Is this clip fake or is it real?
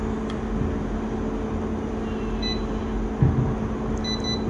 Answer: real